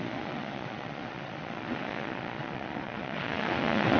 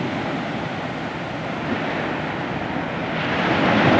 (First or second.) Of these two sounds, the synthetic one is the first